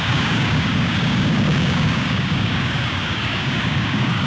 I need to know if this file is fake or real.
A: fake